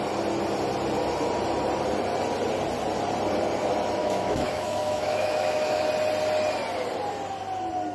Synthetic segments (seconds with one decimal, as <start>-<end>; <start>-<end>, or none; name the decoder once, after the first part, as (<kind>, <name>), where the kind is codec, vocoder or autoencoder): 4.0-5.9 (autoencoder, DAC-VAE)